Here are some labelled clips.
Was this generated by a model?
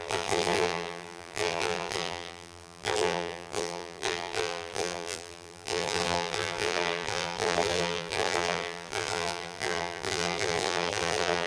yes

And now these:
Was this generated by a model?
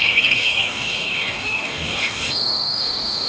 yes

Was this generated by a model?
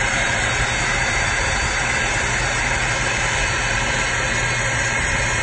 yes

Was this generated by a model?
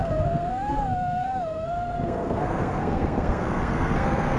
yes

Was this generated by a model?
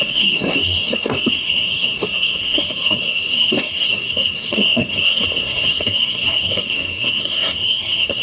yes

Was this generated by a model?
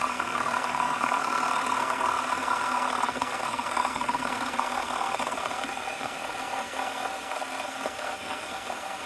yes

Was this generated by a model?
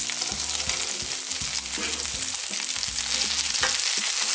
no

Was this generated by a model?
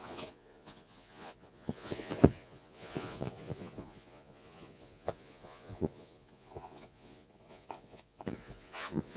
yes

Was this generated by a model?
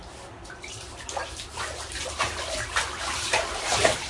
yes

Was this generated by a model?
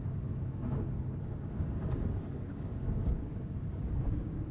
yes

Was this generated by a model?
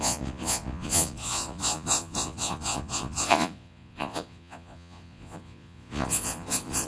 yes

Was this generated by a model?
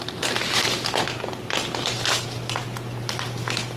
no